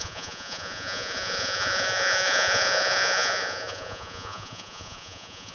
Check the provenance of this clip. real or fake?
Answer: fake